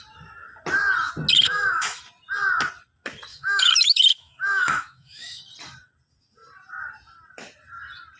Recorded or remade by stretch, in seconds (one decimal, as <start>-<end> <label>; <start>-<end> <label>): 0.0-1.3 recorded; 1.3-2.0 remade; 2.0-3.3 recorded; 3.3-5.4 remade; 5.4-8.2 recorded